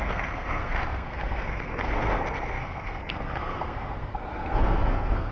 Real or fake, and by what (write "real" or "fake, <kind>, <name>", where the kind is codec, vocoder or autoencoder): fake, codec, SNAC